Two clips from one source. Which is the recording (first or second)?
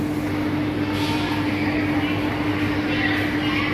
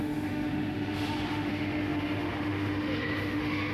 first